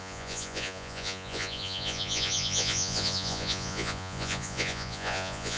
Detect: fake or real fake